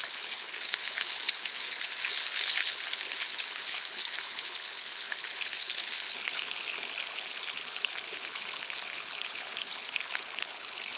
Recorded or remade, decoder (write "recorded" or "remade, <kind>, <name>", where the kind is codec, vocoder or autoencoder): remade, codec, HILCodec